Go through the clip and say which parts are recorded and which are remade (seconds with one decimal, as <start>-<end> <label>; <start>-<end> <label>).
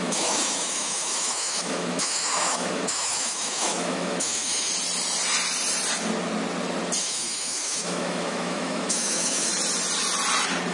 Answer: 0.0-4.7 remade; 4.7-7.0 recorded; 7.0-9.5 remade; 9.5-10.7 recorded